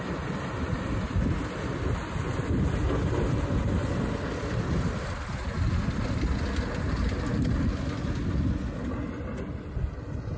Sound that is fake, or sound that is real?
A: real